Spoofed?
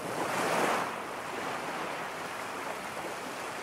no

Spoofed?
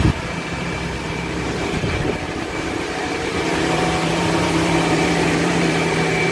yes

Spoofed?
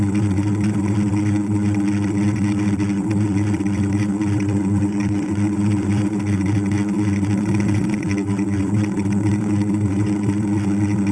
yes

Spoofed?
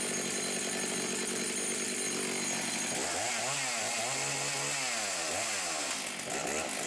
no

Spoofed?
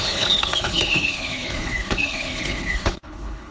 yes